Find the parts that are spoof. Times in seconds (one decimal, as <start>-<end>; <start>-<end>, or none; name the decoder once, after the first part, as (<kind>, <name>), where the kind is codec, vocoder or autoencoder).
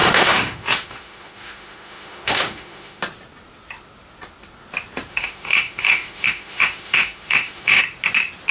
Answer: 0.0-3.0 (autoencoder, DAC-VAE); 5.1-7.8